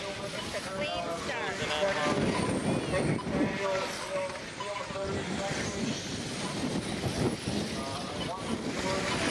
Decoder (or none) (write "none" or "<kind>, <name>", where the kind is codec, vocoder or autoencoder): none